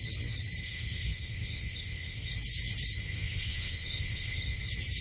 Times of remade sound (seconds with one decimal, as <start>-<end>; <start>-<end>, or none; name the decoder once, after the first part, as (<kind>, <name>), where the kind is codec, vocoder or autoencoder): 0.6-2.3 (codec, ZipCodec); 3.0-4.6

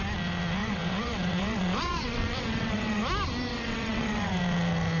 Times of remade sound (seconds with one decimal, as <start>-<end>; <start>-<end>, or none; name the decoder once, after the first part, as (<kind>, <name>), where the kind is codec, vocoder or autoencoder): 0.6-3.0 (vocoder, WaveNeXt); 3.5-4.3

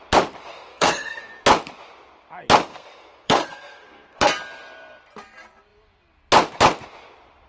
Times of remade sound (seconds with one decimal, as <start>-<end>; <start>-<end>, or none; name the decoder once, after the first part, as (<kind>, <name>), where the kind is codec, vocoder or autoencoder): 0.5-1.2 (codec, SNAC); 2.7-4.3

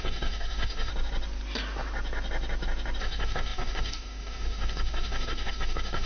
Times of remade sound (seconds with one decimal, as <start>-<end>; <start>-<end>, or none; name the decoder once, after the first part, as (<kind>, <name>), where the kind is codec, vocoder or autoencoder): 0.0-0.9 (codec, DAC); 3.0-6.1

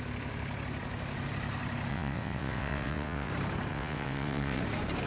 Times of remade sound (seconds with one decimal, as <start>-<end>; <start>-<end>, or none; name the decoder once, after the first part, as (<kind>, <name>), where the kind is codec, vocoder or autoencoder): 1.9-3.3 (vocoder, WaveNeXt); 3.7-4.6

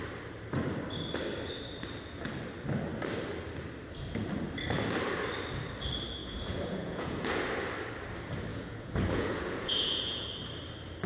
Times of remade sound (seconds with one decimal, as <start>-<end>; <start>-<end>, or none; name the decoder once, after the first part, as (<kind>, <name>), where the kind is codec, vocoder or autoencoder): 6.2-7.4 (vocoder, Vocos); 8.5-10.3

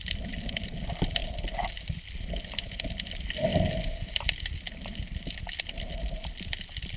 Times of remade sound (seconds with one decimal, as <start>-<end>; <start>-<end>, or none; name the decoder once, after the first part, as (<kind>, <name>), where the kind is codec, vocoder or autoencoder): none